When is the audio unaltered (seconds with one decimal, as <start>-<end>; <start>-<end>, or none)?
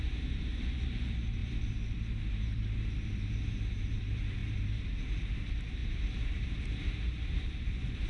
none